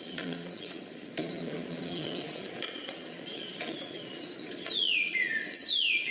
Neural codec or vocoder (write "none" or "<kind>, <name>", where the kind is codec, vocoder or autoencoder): vocoder, Vocos